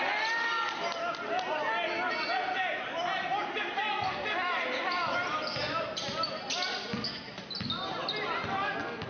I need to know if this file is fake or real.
real